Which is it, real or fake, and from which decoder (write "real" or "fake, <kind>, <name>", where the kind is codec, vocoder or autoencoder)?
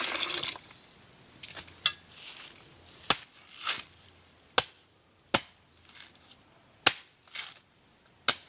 real